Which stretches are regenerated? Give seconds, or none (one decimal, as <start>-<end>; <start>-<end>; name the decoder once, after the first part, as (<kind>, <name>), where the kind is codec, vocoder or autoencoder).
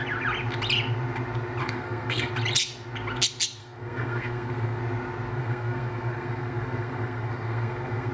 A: 1.6-2.3 (codec, SNAC); 3.6-4.8; 5.3-8.1